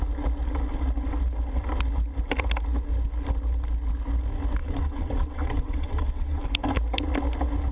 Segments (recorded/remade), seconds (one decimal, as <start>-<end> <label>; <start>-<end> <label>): 0.0-4.6 recorded; 4.6-6.4 remade; 6.4-7.7 recorded